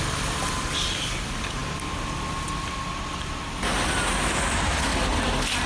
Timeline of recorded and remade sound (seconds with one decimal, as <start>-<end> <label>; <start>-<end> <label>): 0.0-5.7 recorded